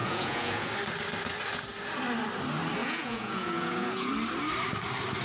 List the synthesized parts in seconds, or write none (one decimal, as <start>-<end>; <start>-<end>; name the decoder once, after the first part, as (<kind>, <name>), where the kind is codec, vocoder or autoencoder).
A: 0.0-0.7 (vocoder, Vocos); 2.8-4.1